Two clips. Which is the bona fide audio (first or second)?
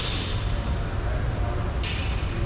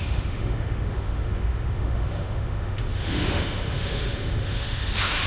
first